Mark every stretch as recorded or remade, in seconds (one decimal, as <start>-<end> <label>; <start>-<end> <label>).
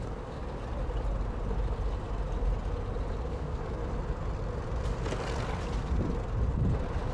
0.0-0.4 remade; 0.4-3.3 recorded; 3.3-3.8 remade; 3.8-7.1 recorded